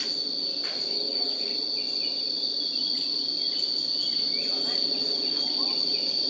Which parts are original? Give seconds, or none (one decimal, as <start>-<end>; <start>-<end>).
0.0-0.7; 1.5-6.3